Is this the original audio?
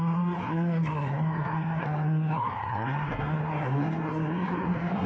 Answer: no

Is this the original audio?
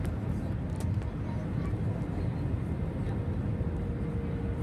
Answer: yes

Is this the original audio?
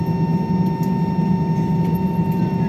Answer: yes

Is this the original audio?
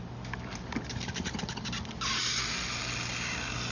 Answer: yes